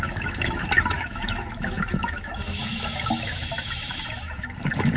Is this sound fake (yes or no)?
yes